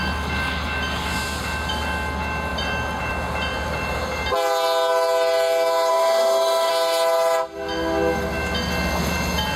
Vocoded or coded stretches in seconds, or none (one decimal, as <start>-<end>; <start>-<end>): 5.9-6.7